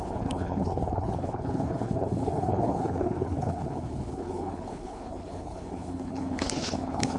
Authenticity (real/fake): fake